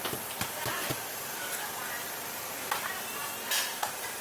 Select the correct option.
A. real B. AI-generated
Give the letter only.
A